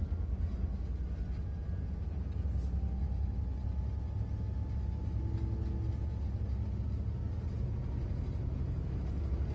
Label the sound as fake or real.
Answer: real